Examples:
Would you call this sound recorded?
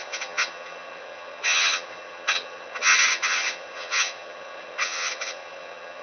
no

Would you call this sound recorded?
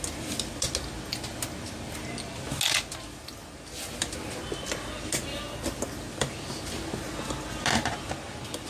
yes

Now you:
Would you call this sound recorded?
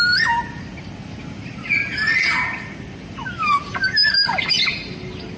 yes